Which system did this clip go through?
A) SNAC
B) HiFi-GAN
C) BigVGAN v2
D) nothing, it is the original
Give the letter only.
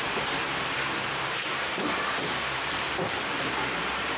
C